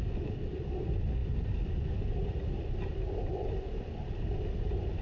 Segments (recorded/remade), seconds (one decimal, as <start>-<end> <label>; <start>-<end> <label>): 0.0-5.0 recorded